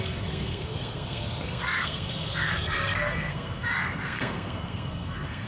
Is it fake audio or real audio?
fake